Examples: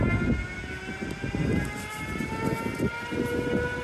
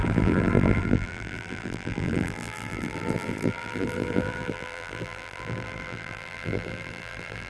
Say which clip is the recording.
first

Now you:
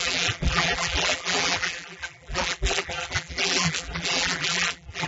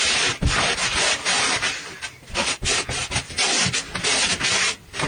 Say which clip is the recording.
second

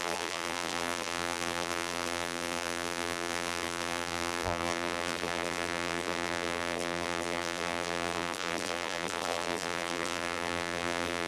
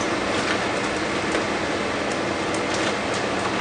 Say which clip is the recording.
second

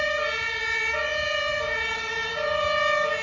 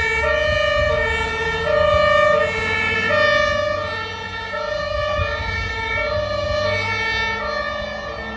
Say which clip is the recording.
second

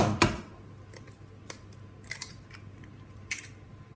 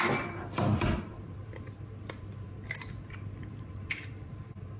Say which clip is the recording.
first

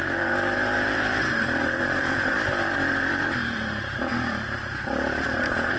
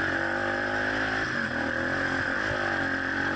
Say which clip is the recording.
second